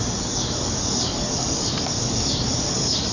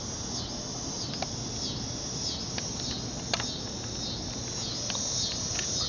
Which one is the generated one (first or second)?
first